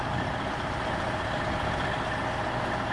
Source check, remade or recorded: recorded